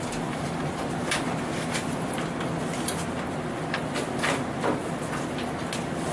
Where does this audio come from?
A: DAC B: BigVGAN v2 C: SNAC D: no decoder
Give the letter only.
D